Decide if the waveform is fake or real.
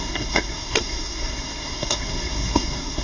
fake